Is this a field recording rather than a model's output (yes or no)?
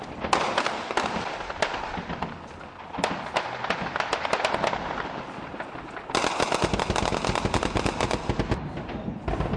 yes